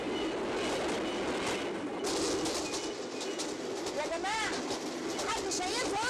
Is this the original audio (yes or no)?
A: yes